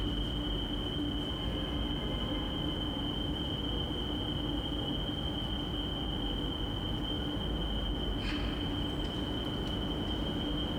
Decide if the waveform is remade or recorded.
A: recorded